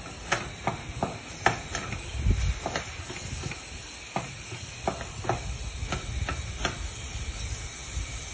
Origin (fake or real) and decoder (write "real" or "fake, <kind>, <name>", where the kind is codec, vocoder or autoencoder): real